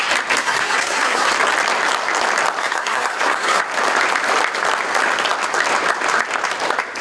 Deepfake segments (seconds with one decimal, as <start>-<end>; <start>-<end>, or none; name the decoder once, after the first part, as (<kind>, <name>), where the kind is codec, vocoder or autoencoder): 0.4-1.3 (codec, SNAC); 2.6-3.6